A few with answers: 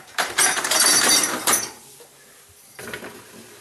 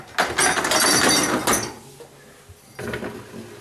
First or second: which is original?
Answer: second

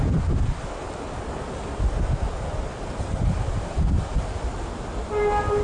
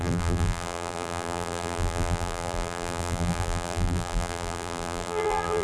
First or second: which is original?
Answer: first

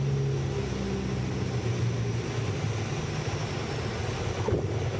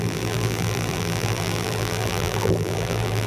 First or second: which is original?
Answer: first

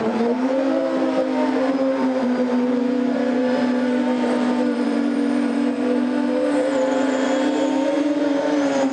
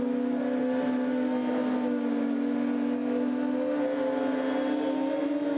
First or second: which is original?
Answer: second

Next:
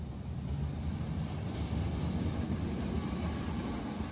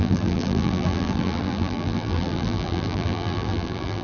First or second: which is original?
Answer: first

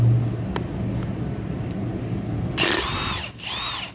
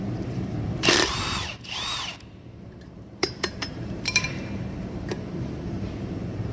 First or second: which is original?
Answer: first